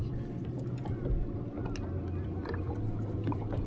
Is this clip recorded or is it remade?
recorded